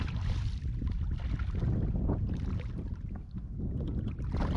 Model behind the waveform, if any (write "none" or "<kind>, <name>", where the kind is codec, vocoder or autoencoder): none